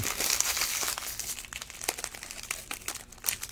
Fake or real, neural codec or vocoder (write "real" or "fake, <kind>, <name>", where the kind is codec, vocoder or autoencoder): real